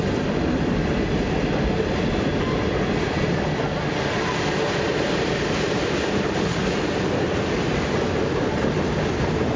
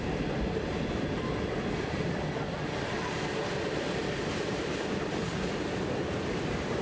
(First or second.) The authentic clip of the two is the first